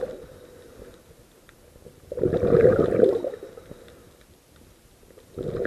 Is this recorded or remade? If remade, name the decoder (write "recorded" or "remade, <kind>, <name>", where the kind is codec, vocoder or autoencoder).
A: recorded